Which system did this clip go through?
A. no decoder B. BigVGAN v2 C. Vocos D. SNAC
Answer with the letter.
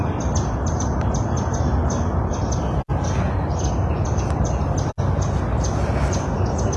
A